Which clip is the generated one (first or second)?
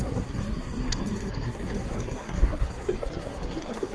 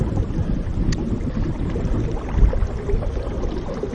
first